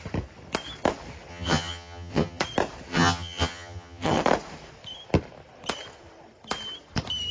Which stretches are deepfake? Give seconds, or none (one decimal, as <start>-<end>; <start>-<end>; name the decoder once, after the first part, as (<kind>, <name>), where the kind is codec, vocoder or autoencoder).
1.3-2.4 (vocoder, HiFi-GAN); 2.9-4.2